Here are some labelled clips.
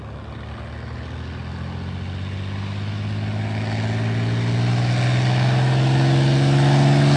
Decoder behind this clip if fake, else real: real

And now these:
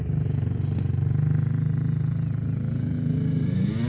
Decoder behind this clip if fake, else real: real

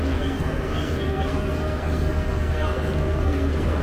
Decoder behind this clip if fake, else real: fake, codec, SNAC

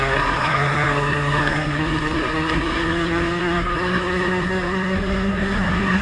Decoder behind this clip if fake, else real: fake, codec, SNAC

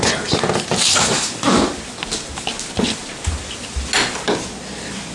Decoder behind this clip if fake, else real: real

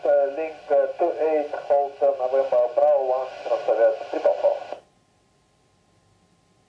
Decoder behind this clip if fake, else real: real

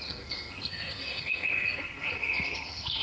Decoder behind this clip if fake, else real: fake, codec, SNAC